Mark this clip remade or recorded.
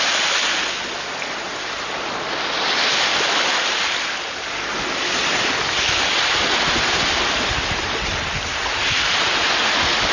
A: recorded